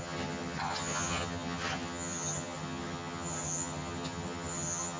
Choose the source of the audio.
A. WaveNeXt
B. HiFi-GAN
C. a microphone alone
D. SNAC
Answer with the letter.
B